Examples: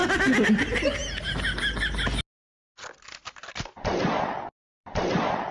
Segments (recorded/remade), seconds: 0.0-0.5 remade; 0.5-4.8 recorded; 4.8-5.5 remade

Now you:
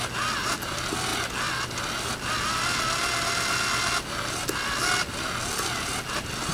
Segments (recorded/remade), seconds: 0.0-6.5 recorded